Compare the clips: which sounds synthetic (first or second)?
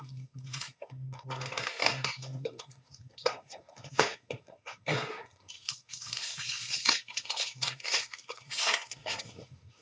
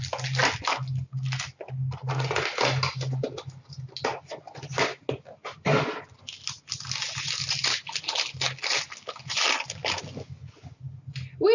first